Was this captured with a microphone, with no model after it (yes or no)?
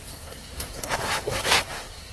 no